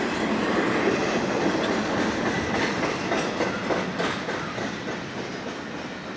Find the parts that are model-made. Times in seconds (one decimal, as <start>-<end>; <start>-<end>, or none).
none